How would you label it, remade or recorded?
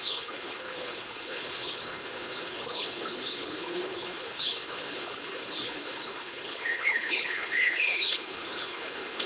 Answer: remade